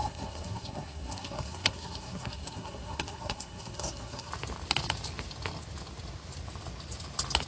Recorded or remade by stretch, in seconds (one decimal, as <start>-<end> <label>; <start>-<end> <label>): 0.0-4.3 remade; 4.3-7.5 recorded